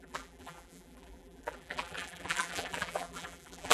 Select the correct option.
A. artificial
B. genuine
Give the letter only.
A